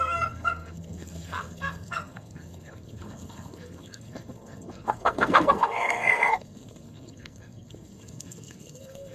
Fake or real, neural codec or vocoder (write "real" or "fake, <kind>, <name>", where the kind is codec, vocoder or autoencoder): fake, codec, SNAC